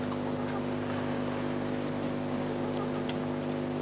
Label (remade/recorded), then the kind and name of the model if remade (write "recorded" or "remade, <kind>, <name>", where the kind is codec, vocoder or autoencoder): recorded